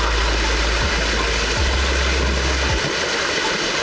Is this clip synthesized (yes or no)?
no